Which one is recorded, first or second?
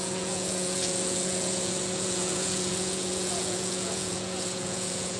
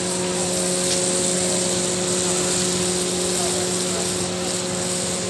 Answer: second